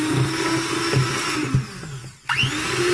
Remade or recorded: recorded